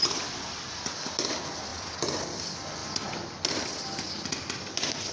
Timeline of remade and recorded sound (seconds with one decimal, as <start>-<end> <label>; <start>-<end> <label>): 0.0-5.1 recorded